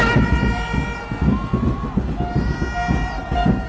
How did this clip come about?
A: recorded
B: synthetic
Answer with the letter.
A